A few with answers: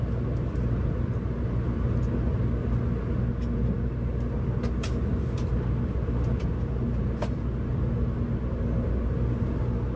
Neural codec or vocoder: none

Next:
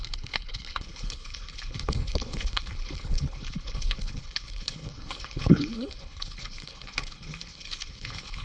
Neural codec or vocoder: codec, HILCodec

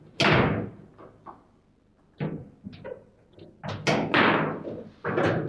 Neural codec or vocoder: none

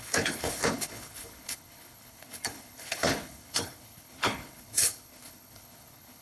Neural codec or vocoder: codec, HILCodec